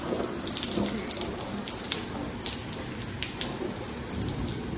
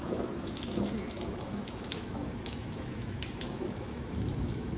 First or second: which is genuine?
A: first